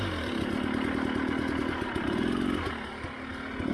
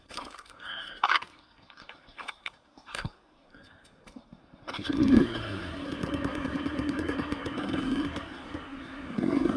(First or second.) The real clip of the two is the first